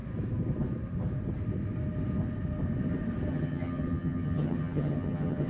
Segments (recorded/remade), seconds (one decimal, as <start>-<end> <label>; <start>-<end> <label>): 0.0-3.3 recorded; 3.3-5.5 remade